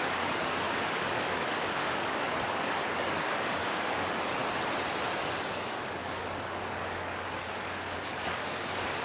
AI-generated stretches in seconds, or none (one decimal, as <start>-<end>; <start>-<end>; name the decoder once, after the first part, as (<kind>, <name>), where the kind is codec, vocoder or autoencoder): 0.0-4.4 (codec, DAC); 5.5-9.0